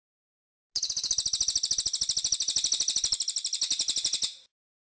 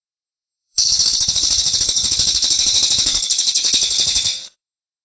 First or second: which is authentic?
first